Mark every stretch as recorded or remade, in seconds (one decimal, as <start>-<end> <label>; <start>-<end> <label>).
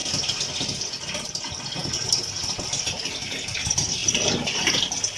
0.0-4.0 recorded; 4.0-4.8 remade; 4.8-5.2 recorded